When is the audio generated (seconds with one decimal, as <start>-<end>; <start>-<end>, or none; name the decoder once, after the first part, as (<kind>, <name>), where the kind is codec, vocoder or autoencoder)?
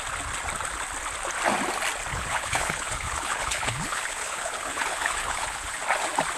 2.1-5.8 (codec, HILCodec)